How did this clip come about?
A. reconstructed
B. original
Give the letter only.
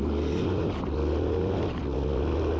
B